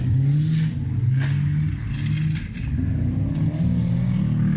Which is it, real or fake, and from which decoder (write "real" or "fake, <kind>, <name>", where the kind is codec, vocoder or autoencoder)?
real